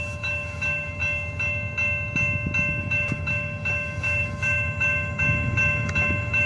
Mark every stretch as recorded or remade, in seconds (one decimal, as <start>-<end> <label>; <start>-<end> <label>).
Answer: 0.0-1.0 remade; 1.0-2.8 recorded; 2.8-6.5 remade